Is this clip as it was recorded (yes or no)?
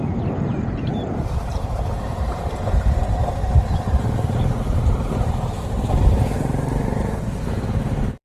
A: no